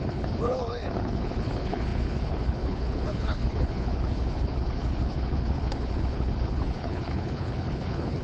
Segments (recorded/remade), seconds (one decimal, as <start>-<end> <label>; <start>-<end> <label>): 0.0-8.2 remade